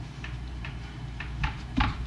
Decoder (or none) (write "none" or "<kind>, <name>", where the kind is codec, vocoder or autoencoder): vocoder, BigVGAN v2